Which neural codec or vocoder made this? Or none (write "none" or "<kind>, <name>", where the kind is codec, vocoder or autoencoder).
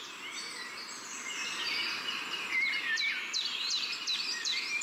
vocoder, BigVGAN v2